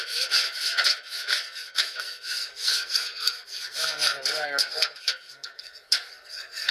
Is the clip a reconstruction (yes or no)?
yes